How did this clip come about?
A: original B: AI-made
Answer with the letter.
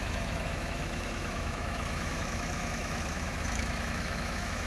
B